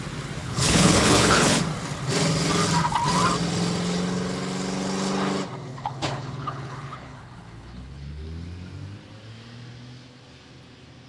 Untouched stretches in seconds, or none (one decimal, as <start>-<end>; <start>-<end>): 0.0-0.4; 1.6-5.7; 8.2-11.1